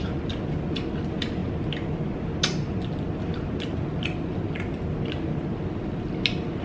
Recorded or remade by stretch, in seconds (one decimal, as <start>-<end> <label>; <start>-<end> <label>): 0.0-6.6 recorded